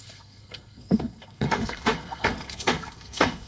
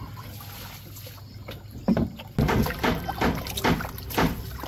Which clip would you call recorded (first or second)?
second